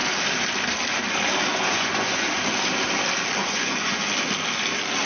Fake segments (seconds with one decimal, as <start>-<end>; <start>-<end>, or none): 1.5-2.3; 3.4-4.0